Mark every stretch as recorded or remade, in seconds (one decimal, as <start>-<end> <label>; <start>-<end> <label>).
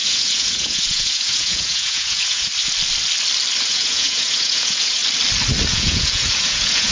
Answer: 0.0-2.5 remade; 2.5-3.6 recorded; 3.6-5.0 remade; 5.0-5.7 recorded; 5.7-6.9 remade